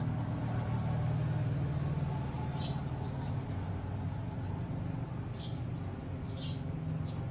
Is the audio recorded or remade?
recorded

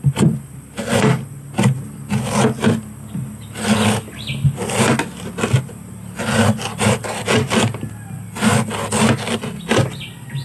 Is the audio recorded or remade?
recorded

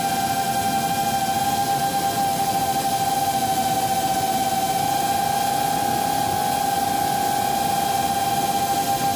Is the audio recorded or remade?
recorded